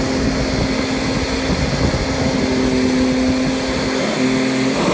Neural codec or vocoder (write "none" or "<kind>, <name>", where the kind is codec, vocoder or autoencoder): none